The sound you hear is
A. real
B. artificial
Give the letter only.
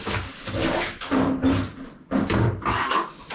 A